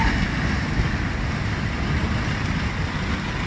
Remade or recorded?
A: recorded